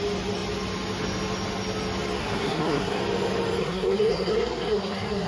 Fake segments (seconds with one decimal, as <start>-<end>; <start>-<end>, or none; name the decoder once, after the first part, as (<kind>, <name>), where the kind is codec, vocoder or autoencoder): 2.2-3.0 (codec, SNAC); 3.6-5.3